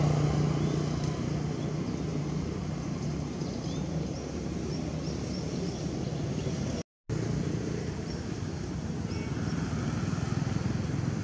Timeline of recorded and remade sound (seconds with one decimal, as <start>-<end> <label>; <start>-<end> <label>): 0.0-2.1 recorded; 2.1-4.2 remade; 4.2-11.2 recorded